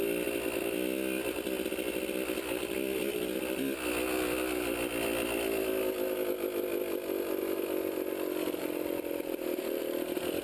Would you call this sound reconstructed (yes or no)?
no